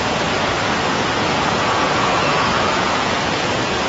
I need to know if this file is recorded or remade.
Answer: remade